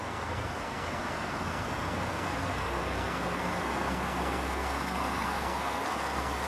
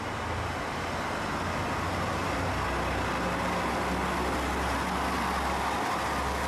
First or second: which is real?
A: second